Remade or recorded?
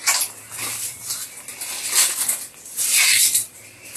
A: recorded